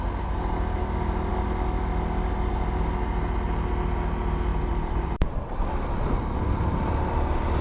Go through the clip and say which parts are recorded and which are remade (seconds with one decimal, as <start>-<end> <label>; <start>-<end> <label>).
0.0-4.5 recorded; 4.5-5.3 remade; 5.3-7.6 recorded